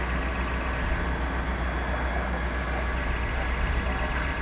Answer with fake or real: real